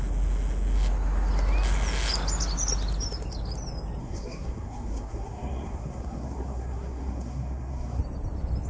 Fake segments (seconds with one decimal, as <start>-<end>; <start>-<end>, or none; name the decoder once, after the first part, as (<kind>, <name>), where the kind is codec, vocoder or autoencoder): 4.0-8.0 (codec, SNAC)